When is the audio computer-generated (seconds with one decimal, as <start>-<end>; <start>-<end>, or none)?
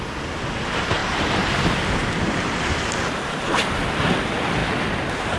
1.0-3.5